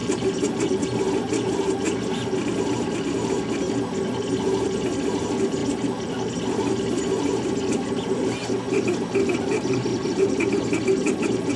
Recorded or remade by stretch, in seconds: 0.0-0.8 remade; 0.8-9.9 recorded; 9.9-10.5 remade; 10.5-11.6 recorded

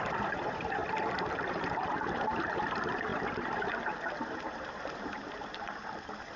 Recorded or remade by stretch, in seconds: 0.0-0.8 remade; 0.8-1.5 recorded; 1.5-6.4 remade

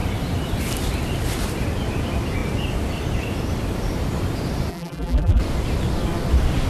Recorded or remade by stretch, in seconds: 0.0-4.7 recorded; 4.7-5.4 remade; 5.4-6.7 recorded

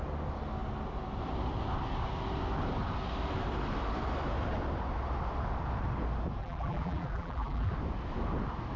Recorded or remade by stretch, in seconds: 0.0-6.4 recorded; 6.4-7.7 remade; 7.7-8.8 recorded

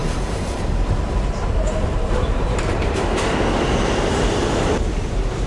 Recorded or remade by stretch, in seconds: 0.0-3.3 remade; 3.3-4.1 recorded; 4.1-4.7 remade; 4.7-5.5 recorded